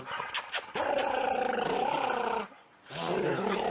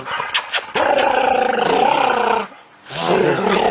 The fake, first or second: first